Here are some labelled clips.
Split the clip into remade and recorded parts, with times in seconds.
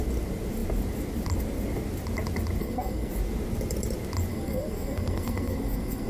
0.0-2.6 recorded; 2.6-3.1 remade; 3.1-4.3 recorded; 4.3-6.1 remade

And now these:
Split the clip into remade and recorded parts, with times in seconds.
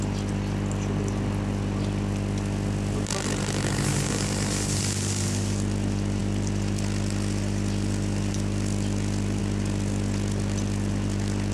0.0-11.5 recorded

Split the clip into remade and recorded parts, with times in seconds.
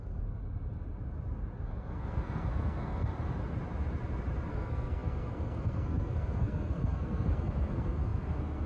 0.0-0.4 remade; 0.4-1.6 recorded; 1.6-3.1 remade; 3.1-4.5 recorded; 4.5-8.7 remade